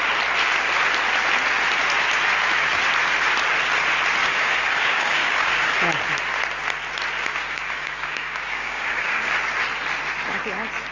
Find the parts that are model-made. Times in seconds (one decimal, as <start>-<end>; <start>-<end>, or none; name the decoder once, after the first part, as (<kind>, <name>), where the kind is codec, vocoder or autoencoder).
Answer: 4.2-5.7 (codec, DAC); 7.3-9.2